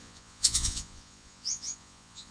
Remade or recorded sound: remade